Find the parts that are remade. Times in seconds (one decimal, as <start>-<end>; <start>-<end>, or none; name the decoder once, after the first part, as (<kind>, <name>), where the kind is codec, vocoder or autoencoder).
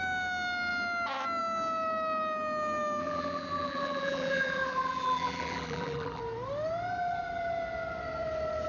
3.0-6.2 (vocoder, BigVGAN v2)